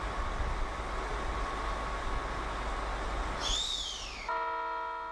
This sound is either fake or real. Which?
real